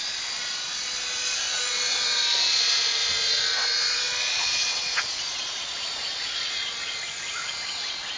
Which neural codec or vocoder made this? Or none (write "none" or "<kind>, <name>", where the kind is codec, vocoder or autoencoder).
vocoder, Vocos